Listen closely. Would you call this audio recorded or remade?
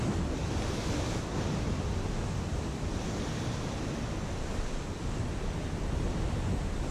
recorded